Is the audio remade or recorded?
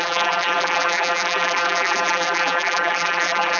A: remade